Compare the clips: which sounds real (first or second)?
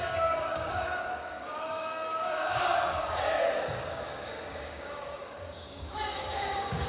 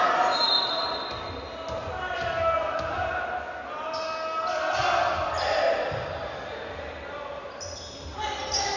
second